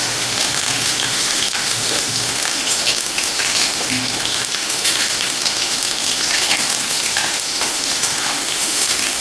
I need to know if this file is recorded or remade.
remade